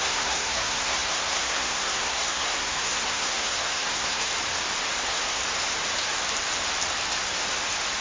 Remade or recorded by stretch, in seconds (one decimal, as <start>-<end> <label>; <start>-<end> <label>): 0.0-4.3 remade; 4.3-5.0 recorded; 5.0-5.4 remade; 5.4-8.0 recorded